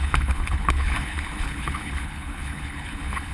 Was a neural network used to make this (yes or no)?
yes